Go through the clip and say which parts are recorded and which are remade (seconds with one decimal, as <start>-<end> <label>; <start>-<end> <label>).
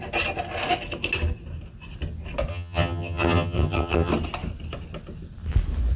0.0-2.5 recorded; 2.5-4.1 remade; 4.1-6.0 recorded